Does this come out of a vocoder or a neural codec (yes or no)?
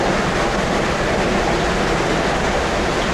no